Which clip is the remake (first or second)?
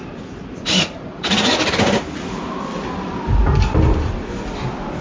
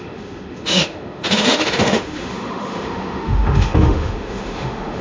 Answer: second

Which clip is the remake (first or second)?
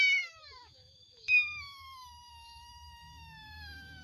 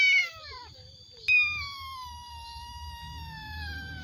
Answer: first